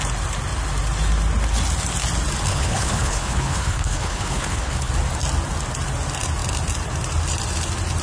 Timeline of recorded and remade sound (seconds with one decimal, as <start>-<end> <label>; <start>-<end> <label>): 0.0-2.5 recorded; 2.5-4.9 remade; 4.9-8.0 recorded